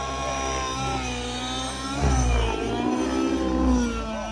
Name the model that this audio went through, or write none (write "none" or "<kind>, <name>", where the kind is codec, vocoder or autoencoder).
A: none